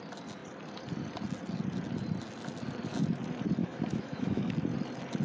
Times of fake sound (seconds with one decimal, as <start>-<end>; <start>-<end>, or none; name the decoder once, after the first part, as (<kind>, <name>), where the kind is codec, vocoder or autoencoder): 3.6-4.5 (autoencoder, DAC-VAE)